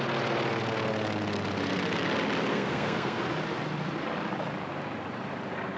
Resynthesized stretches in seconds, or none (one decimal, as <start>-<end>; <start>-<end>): 2.5-3.2

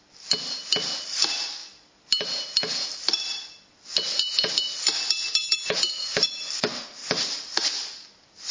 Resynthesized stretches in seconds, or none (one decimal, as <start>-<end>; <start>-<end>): none

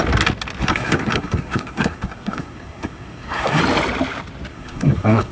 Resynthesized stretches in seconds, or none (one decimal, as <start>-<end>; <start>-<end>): 0.7-3.6; 4.5-5.3

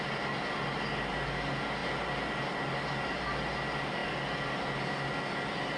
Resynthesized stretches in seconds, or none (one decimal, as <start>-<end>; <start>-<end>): none

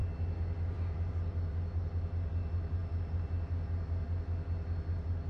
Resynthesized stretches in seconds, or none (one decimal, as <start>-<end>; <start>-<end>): none

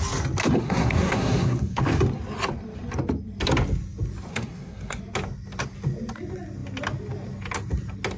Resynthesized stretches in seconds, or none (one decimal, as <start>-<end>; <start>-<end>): 0.4-1.8; 4.3-5.0

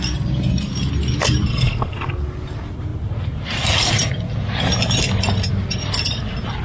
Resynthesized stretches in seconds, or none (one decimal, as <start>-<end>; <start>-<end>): 1.5-2.1

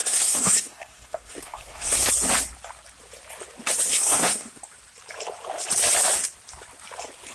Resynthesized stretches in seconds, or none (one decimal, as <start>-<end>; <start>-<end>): 0.0-2.1; 3.9-4.6